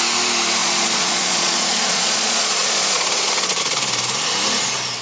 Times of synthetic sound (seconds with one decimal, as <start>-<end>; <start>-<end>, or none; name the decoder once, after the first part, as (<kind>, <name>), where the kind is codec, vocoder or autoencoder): 0.6-3.6 (vocoder, Vocos)